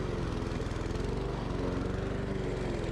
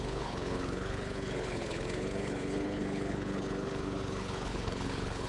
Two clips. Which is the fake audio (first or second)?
second